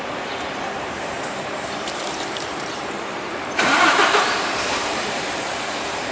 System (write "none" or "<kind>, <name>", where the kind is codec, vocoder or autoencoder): vocoder, BigVGAN v2